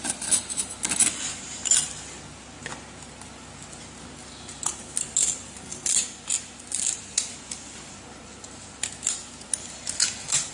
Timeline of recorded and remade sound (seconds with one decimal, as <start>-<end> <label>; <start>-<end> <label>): 0.0-10.5 recorded